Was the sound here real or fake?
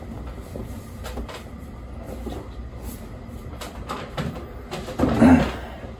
real